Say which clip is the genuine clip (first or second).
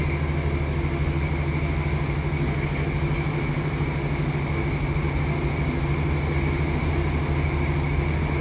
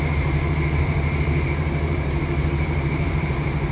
first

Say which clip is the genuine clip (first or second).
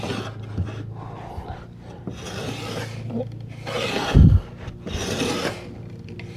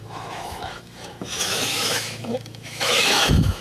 first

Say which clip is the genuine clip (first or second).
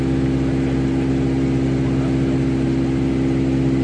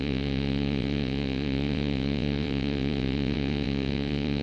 first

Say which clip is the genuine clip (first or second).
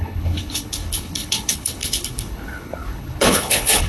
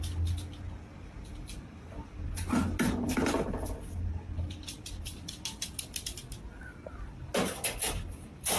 second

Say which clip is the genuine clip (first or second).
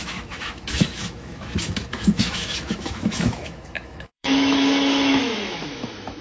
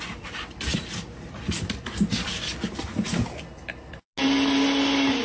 second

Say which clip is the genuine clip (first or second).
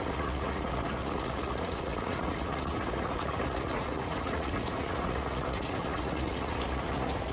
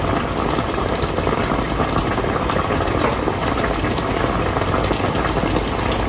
second